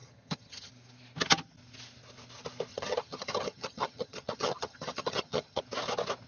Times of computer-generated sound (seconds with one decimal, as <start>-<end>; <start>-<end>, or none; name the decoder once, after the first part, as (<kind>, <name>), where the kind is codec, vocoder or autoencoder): 0.0-0.7 (vocoder, HiFi-GAN); 2.7-5.6